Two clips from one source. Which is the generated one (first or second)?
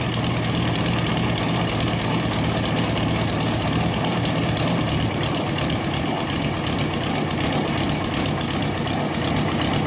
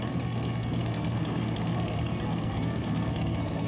second